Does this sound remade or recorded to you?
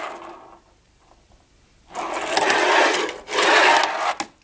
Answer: recorded